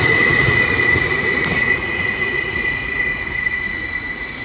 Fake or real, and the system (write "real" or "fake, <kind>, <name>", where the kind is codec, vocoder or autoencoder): fake, vocoder, Vocos